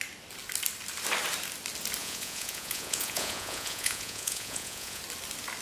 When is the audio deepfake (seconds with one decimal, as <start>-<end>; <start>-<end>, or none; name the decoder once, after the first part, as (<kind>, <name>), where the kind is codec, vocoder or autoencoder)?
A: 2.0-5.0 (vocoder, Vocos)